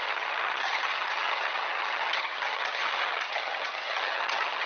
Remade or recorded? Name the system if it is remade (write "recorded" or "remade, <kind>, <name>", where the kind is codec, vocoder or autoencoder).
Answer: remade, vocoder, HiFi-GAN